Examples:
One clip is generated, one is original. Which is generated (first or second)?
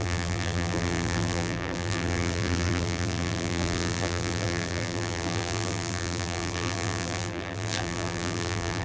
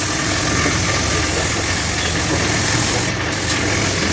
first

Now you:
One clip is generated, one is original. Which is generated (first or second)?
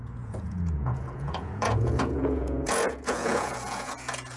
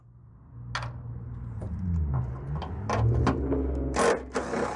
first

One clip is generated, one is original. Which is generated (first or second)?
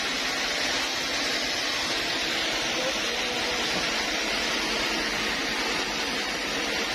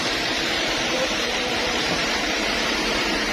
second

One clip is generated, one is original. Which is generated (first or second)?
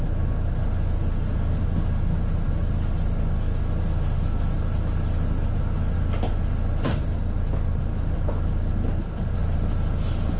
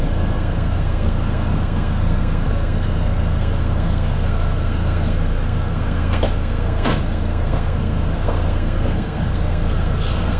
second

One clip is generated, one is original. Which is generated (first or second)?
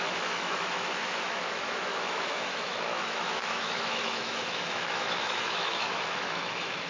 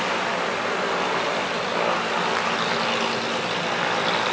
first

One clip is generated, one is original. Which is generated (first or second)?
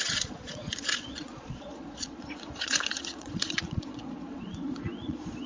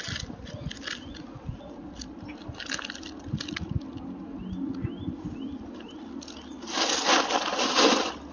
first